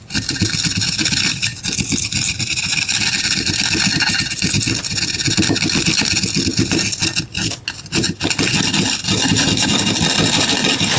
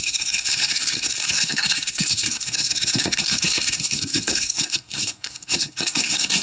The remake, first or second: second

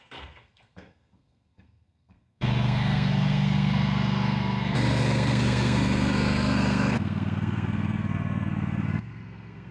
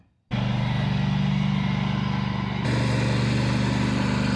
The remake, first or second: first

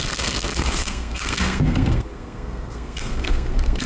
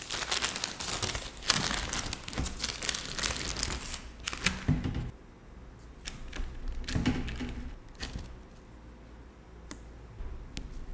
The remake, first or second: first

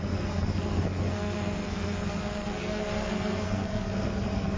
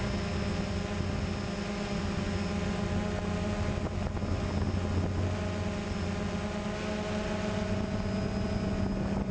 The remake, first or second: first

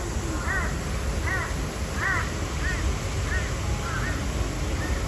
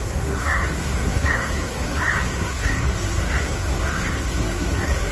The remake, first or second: second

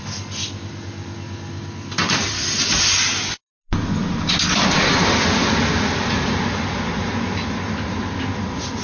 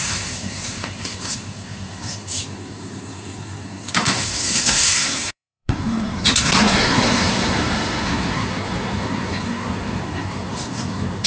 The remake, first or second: second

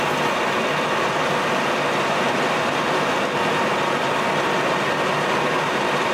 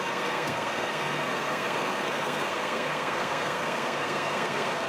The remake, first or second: second